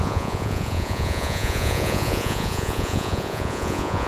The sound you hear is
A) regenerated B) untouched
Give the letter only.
A